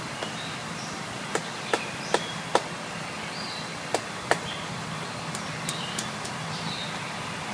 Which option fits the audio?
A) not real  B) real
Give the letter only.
B